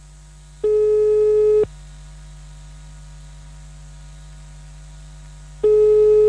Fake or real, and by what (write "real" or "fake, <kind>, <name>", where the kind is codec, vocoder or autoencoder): real